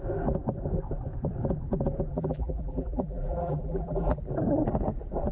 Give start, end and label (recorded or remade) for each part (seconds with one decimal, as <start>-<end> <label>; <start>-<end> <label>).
0.0-2.1 recorded; 2.1-4.2 remade; 4.2-5.3 recorded